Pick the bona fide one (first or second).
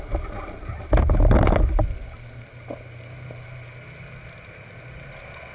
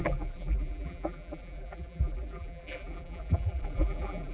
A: first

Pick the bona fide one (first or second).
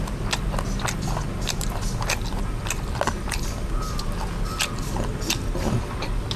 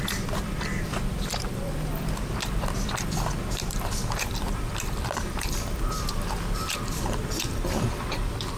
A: first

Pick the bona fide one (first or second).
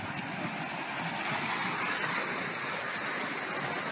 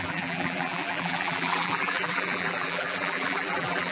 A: first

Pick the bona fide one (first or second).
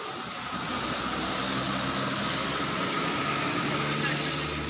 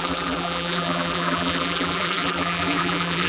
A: first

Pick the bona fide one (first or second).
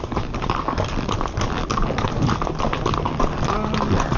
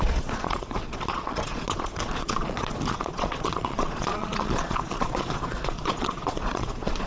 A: first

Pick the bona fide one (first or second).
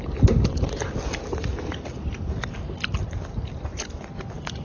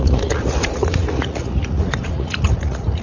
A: first